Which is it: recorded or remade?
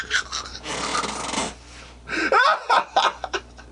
recorded